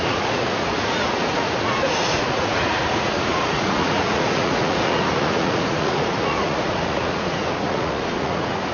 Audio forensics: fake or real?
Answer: fake